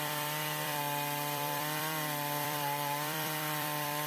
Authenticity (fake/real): fake